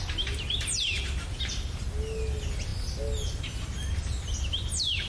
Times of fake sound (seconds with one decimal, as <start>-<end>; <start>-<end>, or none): none

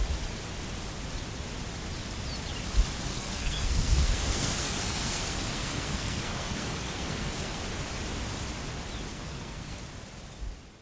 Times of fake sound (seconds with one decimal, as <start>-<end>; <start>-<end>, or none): 3.1-7.6; 9.1-9.8

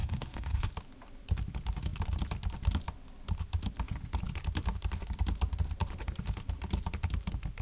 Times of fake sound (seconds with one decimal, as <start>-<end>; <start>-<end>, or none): 0.0-0.7